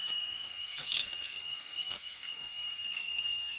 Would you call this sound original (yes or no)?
no